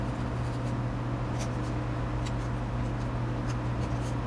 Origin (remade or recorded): recorded